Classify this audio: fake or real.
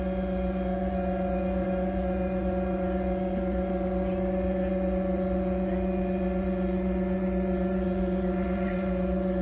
fake